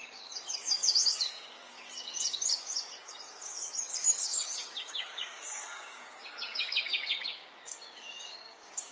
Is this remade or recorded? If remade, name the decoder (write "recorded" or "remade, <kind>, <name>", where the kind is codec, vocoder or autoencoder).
remade, codec, DAC